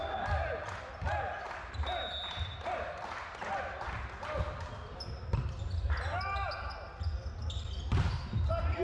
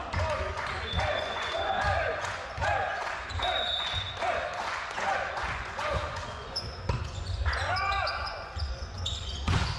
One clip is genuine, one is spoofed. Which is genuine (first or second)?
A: first